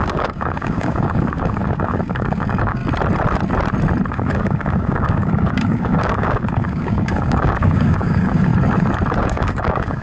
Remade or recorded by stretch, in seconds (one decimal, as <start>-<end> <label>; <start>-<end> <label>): 0.0-2.8 remade; 2.8-4.1 recorded; 4.1-8.5 remade; 8.5-9.2 recorded; 9.2-10.0 remade